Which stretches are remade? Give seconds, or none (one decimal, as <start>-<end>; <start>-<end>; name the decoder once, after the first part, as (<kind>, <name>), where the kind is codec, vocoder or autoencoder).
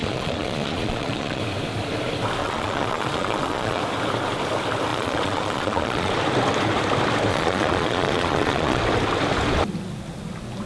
0.0-1.4 (vocoder, Vocos); 2.4-3.8; 4.9-6.1; 7.3-8.8